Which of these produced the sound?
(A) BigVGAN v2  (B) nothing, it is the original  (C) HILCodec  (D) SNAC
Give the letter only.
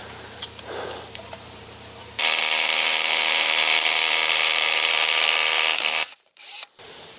A